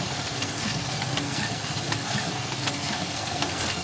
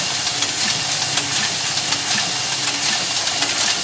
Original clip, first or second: second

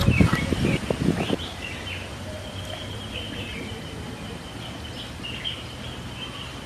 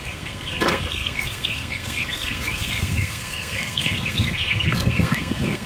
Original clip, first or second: first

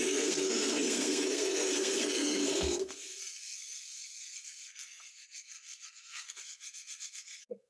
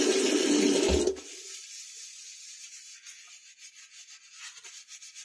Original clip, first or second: second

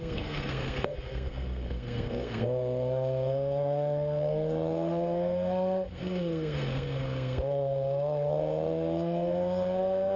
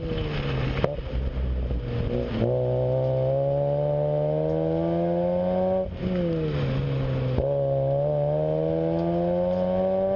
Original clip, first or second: second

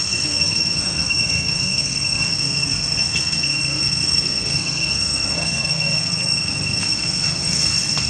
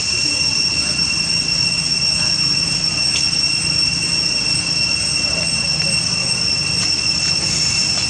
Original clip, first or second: second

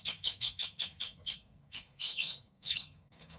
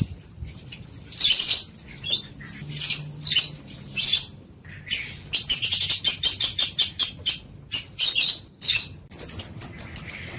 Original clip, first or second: second